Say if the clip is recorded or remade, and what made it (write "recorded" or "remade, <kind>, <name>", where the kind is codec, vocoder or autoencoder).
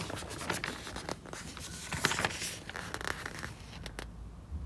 recorded